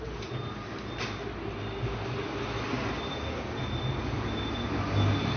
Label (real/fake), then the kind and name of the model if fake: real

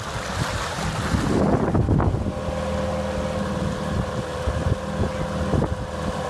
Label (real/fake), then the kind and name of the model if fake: real